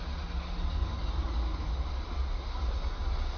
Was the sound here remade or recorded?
recorded